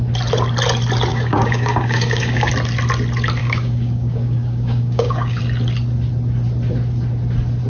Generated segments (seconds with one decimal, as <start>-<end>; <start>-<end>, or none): 1.1-2.5; 3.4-5.4